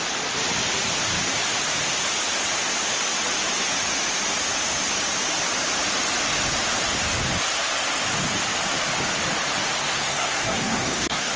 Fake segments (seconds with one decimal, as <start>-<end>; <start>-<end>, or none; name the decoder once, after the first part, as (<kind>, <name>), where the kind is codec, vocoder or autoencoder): 9.8-11.4 (codec, SNAC)